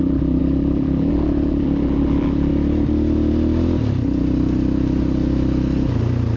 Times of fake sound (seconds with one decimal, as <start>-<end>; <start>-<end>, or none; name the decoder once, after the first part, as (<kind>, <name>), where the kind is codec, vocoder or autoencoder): 0.0-2.5 (vocoder, BigVGAN v2)